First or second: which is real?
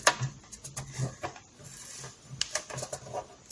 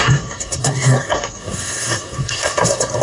first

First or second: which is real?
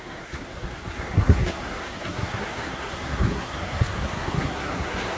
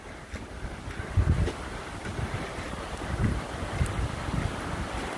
second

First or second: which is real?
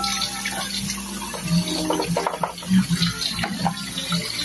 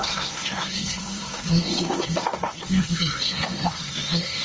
first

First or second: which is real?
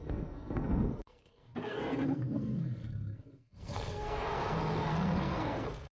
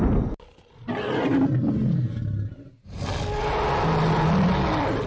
second